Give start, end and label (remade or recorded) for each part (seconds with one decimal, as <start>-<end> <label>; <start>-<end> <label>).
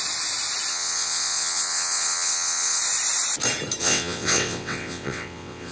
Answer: 0.0-0.7 recorded; 0.7-2.8 remade; 2.8-3.8 recorded; 3.8-5.7 remade